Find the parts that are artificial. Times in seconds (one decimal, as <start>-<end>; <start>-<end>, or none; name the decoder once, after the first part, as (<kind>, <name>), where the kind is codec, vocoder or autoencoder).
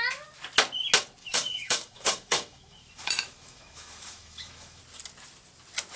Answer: 1.2-4.8 (autoencoder, DAC-VAE)